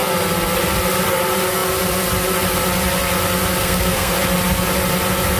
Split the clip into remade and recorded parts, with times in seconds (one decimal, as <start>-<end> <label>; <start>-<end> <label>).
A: 0.0-3.6 recorded; 3.6-4.1 remade; 4.1-5.4 recorded